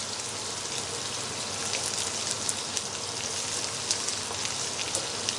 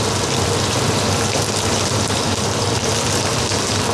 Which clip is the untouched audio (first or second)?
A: first